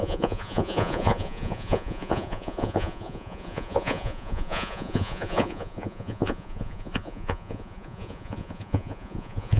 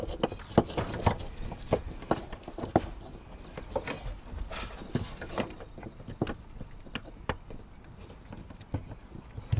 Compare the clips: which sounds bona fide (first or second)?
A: second